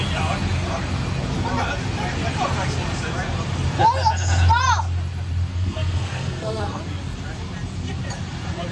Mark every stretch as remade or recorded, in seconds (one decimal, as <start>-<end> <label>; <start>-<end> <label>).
0.0-5.5 recorded; 5.5-6.8 remade; 6.8-8.7 recorded